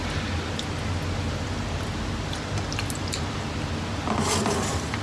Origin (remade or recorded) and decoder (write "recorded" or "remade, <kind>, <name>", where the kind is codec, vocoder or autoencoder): recorded